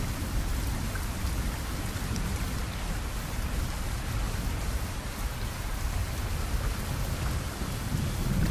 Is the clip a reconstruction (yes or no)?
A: no